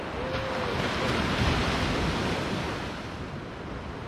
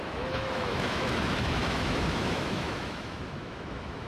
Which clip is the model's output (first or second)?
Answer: second